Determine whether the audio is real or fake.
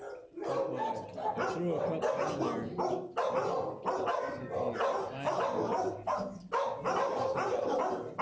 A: real